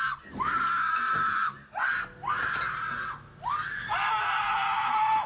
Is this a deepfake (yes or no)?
no